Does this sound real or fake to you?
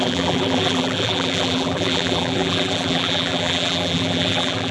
fake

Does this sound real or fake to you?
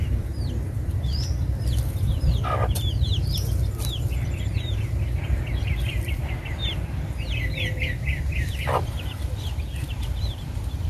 fake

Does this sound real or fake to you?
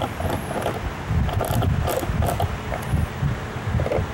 real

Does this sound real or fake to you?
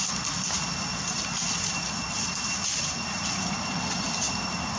real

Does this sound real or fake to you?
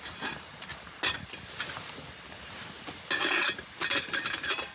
real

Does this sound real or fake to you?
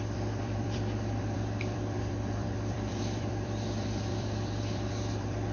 fake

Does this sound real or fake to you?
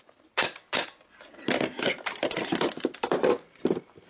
real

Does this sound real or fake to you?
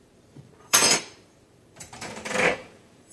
fake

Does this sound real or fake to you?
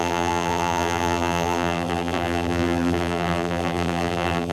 fake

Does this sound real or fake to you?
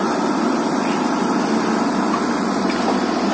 fake